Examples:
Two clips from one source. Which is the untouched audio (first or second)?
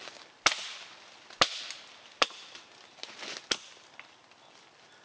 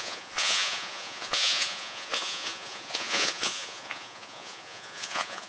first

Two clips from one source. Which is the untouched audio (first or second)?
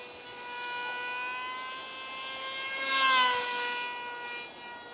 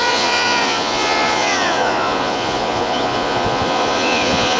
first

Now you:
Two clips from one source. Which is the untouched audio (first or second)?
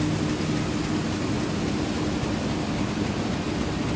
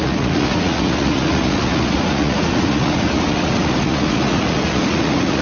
first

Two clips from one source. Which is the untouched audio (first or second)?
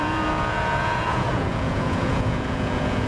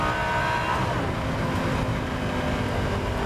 second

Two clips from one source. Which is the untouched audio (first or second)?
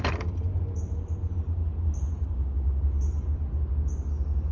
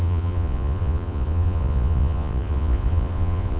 first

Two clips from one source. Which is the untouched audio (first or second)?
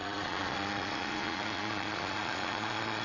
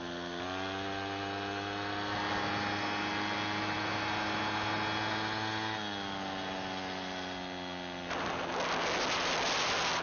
second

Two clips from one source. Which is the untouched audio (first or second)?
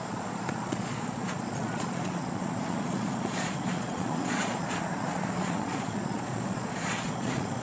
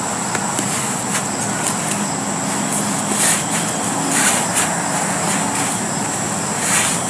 second